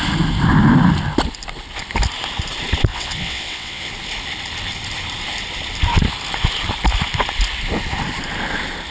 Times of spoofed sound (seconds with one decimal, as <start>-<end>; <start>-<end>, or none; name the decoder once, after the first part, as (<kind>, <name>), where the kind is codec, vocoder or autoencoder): 2.9-3.9 (vocoder, WaveNeXt)